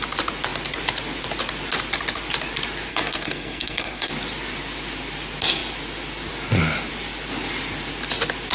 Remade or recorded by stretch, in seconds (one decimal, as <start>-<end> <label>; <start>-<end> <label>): 0.0-2.9 recorded; 2.9-4.1 remade; 4.1-8.5 recorded

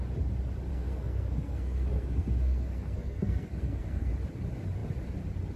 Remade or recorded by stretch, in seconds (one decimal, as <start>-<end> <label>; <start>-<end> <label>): 0.0-0.7 recorded; 0.7-4.1 remade; 4.1-5.6 recorded

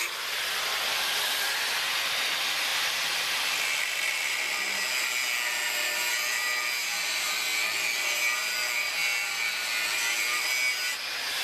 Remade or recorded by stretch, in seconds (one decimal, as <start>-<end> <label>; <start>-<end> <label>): 0.0-11.4 recorded

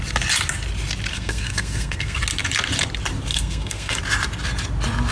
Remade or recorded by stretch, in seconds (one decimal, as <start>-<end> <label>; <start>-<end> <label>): 0.0-1.1 recorded; 1.1-2.2 remade; 2.2-3.3 recorded; 3.3-4.0 remade; 4.0-5.1 recorded

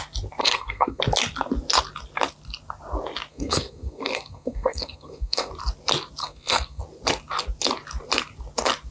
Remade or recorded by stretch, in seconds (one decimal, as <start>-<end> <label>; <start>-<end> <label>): 0.0-0.4 recorded; 0.4-1.0 remade; 1.0-3.3 recorded; 3.3-5.5 remade; 5.5-6.2 recorded; 6.2-6.8 remade; 6.8-8.9 recorded

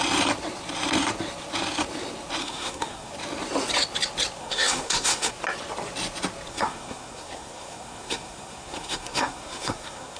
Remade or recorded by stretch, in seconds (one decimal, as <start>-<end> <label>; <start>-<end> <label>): 0.0-2.4 recorded; 2.4-3.1 remade; 3.1-4.4 recorded; 4.4-5.3 remade; 5.3-6.5 recorded; 6.5-10.2 remade

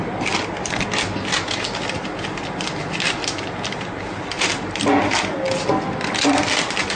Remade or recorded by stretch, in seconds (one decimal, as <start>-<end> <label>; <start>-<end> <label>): 0.0-7.0 recorded

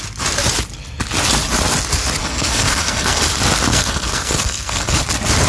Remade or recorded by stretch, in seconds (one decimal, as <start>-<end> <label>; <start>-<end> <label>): 0.0-2.2 recorded; 2.2-3.2 remade; 3.2-3.7 recorded; 3.7-5.0 remade; 5.0-5.5 recorded